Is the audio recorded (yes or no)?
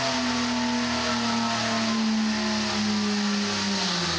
yes